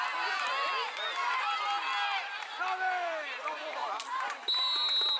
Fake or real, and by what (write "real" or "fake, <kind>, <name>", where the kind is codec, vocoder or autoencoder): real